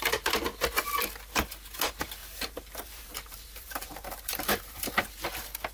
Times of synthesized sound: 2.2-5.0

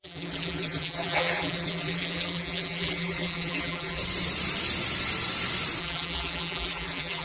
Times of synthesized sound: 0.0-4.0; 5.8-7.2

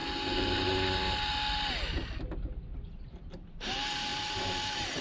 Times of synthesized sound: 3.0-5.0

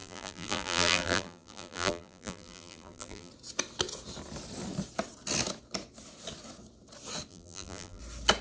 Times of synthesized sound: 0.0-3.3; 7.3-8.0

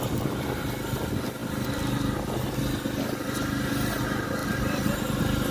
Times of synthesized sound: 4.4-5.0

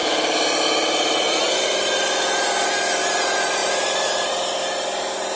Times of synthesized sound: 3.6-4.3

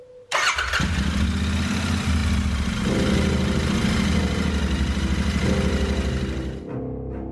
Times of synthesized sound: none

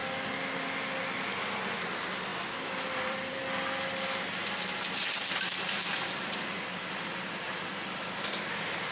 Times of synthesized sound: 1.2-3.4; 8.5-8.9